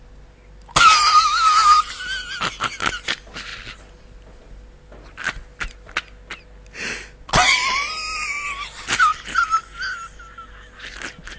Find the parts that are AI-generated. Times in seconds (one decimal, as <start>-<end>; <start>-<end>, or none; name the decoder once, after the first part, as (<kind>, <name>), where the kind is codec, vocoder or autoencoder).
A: none